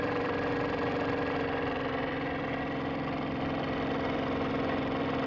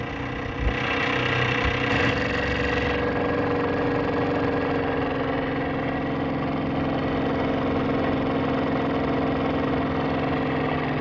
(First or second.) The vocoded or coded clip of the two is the first